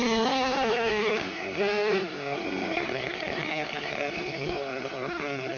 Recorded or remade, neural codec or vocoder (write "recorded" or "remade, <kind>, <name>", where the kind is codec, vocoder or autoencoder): remade, codec, SNAC